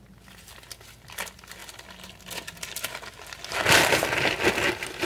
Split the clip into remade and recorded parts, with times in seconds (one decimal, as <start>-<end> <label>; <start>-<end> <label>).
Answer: 0.0-5.1 recorded